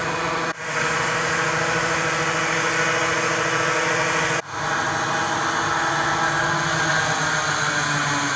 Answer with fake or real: real